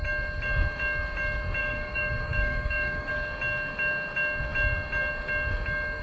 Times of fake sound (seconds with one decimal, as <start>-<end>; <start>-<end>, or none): 1.6-3.1